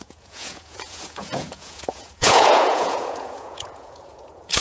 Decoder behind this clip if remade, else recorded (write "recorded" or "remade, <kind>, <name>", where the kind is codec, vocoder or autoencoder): remade, vocoder, Vocos